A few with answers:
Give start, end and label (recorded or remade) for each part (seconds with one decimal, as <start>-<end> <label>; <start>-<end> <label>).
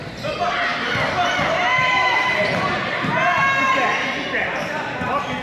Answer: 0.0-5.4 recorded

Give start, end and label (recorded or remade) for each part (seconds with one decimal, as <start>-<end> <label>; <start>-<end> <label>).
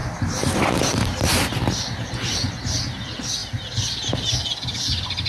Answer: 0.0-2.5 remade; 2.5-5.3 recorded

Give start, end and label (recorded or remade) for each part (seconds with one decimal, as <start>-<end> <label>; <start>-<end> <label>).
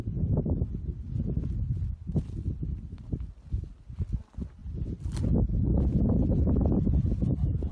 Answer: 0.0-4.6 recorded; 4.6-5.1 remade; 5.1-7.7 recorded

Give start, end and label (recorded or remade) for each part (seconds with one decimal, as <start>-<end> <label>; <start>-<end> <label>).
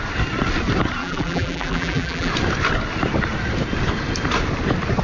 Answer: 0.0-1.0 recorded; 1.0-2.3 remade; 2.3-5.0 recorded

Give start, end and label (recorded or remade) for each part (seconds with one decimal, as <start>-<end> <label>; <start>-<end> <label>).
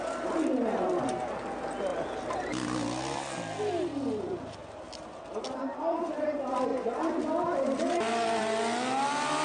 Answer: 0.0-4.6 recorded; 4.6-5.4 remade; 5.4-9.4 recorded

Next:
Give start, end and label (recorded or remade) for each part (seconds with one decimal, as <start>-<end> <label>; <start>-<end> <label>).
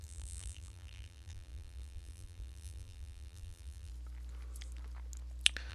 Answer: 0.0-3.9 remade; 3.9-5.7 recorded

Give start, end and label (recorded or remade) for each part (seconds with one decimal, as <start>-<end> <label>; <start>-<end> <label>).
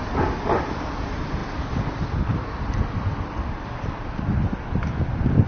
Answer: 0.0-5.5 remade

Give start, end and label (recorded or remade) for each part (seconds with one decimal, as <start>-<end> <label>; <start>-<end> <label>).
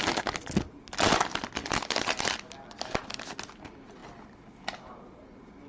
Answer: 0.0-5.7 recorded